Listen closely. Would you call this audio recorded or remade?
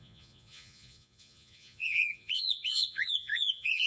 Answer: remade